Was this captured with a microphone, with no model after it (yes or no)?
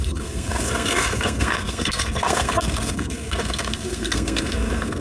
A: no